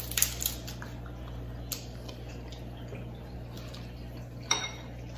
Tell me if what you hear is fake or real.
real